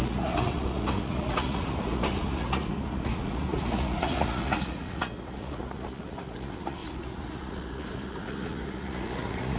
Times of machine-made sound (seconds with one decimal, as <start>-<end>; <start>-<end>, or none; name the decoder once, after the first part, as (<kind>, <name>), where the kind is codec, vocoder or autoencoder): 0.0-9.6 (vocoder, Vocos)